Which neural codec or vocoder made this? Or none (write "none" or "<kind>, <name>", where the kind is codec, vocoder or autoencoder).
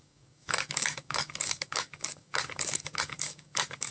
codec, DAC